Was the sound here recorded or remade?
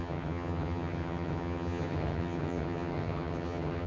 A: remade